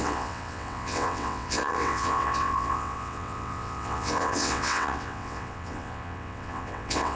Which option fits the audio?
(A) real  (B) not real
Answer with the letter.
B